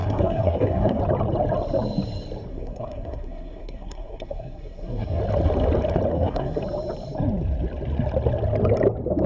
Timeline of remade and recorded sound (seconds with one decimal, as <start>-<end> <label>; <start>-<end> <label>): 0.0-1.0 remade; 1.0-2.5 recorded; 2.5-5.2 remade; 5.2-6.1 recorded; 6.1-6.6 remade; 6.6-9.3 recorded